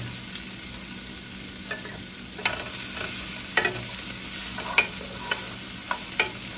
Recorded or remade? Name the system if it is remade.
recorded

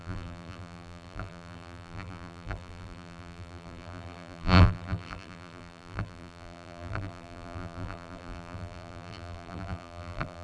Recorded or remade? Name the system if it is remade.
remade, vocoder, BigVGAN v2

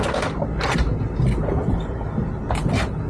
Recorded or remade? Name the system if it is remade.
recorded